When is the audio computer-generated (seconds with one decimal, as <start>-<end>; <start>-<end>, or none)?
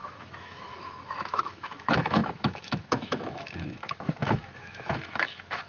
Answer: 0.0-5.7